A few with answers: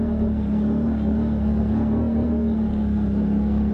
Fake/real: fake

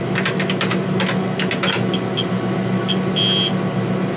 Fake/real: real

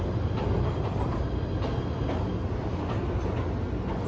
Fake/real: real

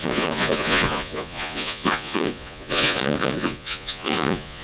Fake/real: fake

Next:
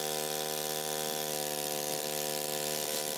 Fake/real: real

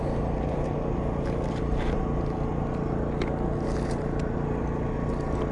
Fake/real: real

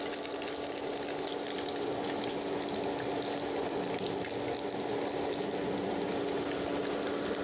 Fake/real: real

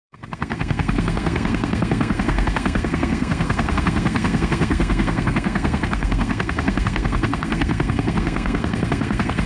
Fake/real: fake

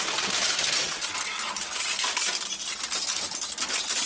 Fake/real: real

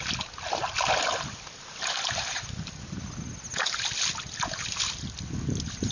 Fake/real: real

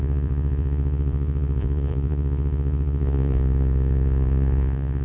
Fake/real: fake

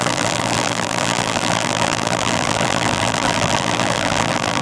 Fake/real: fake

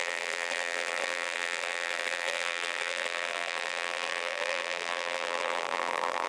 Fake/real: fake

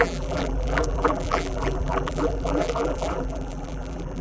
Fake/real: fake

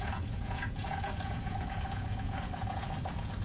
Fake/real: fake